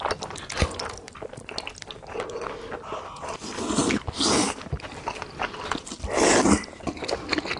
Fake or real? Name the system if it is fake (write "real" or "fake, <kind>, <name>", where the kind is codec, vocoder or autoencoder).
real